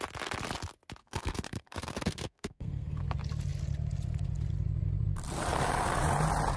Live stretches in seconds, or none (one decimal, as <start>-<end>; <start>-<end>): 0.0-1.0; 3.0-6.6